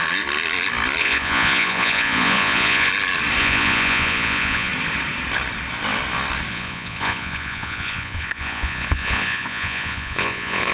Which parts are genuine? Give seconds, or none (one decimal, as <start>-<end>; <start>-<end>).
0.0-1.0; 2.9-3.4; 4.7-6.5